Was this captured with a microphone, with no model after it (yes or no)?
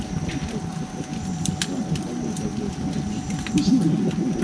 yes